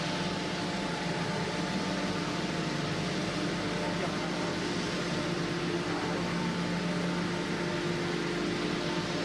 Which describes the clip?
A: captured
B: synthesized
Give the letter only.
A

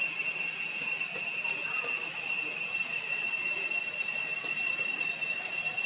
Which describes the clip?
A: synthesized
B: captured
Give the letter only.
B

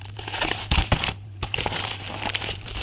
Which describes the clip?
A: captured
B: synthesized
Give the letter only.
B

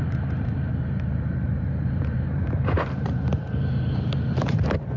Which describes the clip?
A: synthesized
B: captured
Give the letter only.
A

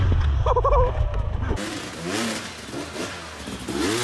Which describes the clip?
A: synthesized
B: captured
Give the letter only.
B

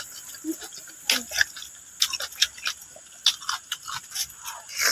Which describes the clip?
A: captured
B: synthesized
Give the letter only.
A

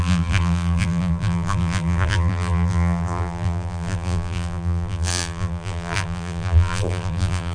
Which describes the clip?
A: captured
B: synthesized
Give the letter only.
B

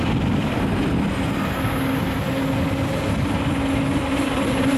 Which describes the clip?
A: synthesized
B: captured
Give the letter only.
B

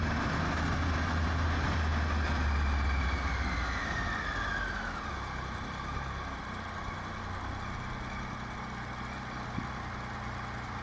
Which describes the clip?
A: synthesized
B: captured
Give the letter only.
B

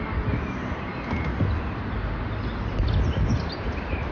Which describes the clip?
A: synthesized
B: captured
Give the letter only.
B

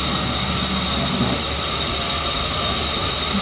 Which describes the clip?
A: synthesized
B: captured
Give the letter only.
B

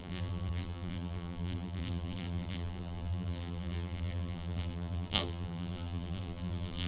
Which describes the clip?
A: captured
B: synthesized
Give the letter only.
B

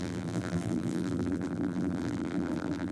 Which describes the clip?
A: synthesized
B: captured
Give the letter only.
A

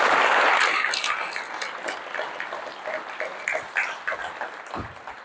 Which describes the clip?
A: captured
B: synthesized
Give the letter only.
A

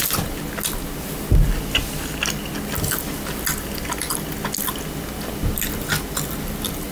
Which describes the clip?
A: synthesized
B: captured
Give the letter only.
B